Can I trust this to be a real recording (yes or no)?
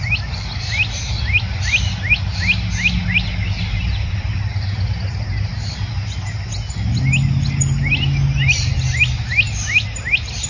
yes